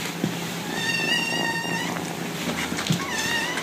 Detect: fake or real fake